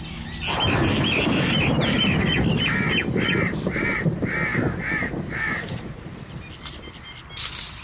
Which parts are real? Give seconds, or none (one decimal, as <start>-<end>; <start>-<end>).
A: 0.0-4.5; 6.4-7.8